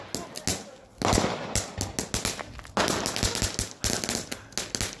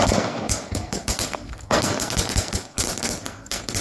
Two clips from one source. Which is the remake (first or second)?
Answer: second